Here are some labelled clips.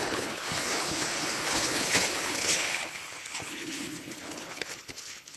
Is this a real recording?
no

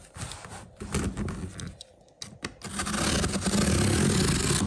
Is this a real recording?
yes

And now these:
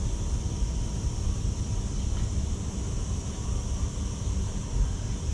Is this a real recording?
yes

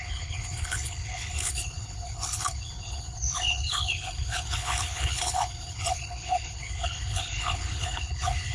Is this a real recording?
no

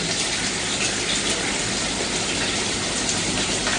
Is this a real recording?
yes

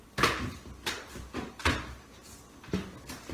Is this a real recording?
yes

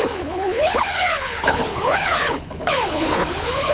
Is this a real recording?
no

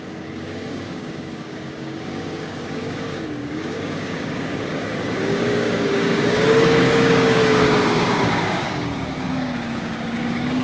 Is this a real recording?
no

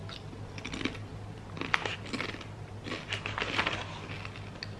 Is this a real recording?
yes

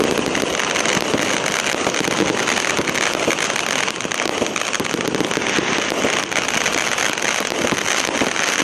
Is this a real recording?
yes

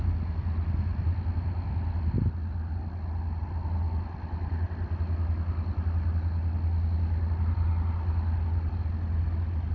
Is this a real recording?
yes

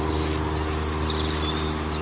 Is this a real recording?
yes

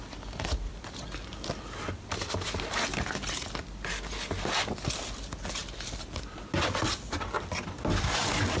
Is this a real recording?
yes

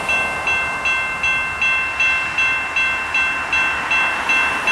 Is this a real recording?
yes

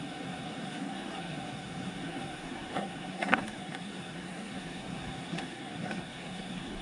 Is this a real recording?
no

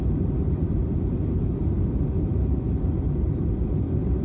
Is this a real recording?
yes